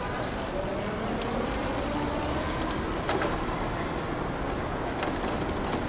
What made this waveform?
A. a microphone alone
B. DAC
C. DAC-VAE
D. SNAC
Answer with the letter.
A